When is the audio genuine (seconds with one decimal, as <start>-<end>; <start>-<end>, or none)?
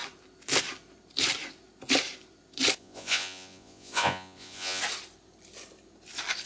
0.0-2.8; 4.8-6.5